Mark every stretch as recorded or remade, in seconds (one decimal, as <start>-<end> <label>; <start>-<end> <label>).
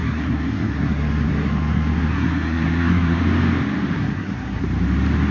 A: 0.0-3.2 remade; 3.2-3.9 recorded; 3.9-4.6 remade; 4.6-5.3 recorded